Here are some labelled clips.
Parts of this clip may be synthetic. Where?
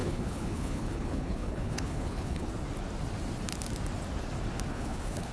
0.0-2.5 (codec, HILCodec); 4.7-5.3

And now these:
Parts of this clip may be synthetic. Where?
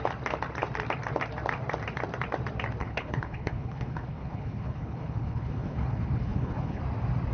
2.8-6.8 (codec, HILCodec)